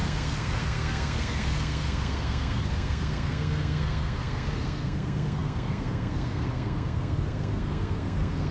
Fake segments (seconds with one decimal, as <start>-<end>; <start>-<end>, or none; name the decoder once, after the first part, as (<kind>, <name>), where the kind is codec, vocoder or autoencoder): 0.0-8.5 (codec, SNAC)